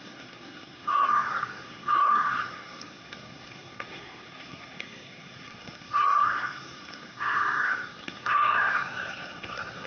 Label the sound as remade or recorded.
remade